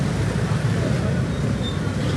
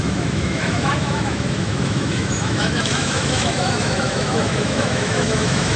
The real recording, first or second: first